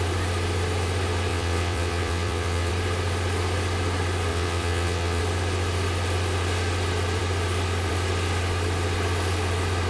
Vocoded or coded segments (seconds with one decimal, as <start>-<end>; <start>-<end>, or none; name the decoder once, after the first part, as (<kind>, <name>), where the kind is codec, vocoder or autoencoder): 1.3-2.7 (vocoder, WaveNeXt); 4.3-5.2